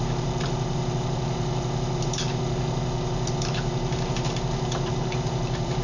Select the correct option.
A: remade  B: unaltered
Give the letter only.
A